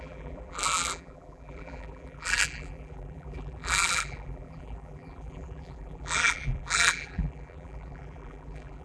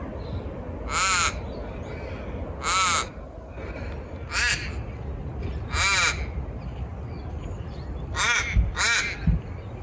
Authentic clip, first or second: second